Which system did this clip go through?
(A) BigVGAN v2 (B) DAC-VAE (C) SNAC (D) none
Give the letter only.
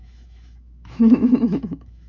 B